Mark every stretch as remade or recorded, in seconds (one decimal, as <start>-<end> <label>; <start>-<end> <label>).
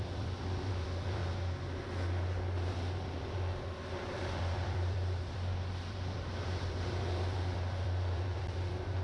0.0-1.2 remade; 1.2-3.9 recorded; 3.9-9.0 remade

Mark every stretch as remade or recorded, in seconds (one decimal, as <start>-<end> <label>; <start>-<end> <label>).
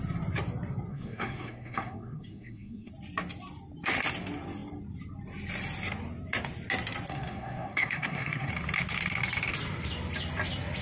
0.0-0.9 recorded; 0.9-2.9 remade; 2.9-7.1 recorded; 7.1-8.5 remade; 8.5-10.8 recorded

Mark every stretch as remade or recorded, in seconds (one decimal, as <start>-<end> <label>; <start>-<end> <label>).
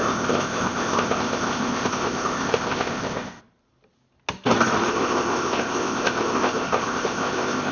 0.0-3.4 remade; 3.4-4.9 recorded; 4.9-7.7 remade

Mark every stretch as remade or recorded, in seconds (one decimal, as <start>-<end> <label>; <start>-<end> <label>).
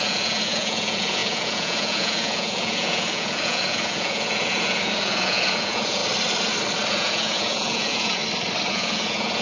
0.0-6.0 remade; 6.0-6.9 recorded; 6.9-8.2 remade; 8.2-8.7 recorded; 8.7-9.4 remade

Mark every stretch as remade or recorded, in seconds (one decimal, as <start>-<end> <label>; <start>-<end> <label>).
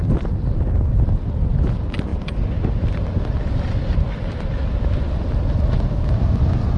0.0-6.8 recorded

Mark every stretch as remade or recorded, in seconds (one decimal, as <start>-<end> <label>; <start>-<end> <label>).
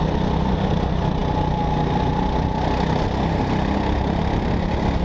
0.0-5.0 recorded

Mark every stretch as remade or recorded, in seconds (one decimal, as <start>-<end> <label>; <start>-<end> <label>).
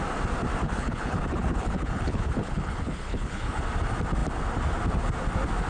0.0-0.6 recorded; 0.6-3.6 remade; 3.6-5.7 recorded